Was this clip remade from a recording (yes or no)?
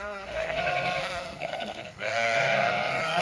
yes